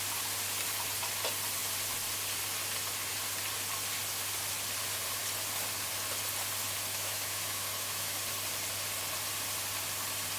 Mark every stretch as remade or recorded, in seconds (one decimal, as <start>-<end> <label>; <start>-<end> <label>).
0.0-6.9 recorded; 6.9-8.2 remade; 8.2-10.4 recorded